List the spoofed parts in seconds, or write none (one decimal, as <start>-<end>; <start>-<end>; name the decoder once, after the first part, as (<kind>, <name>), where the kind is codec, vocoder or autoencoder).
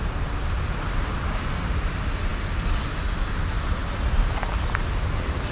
none